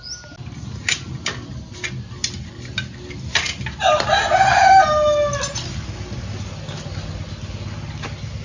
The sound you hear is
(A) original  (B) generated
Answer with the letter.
A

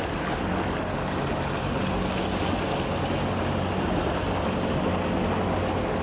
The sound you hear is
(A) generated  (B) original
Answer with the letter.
B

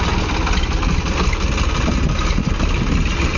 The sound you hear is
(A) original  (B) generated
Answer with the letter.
A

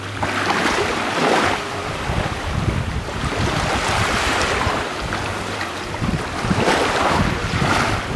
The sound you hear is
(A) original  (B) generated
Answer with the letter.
B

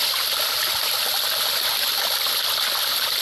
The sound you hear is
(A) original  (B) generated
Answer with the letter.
A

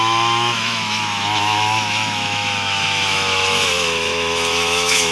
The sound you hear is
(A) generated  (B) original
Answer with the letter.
A